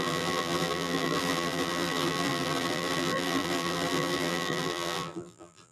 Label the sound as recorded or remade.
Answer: remade